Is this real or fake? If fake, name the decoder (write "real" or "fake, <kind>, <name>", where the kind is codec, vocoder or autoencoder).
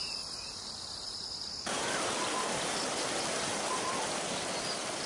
real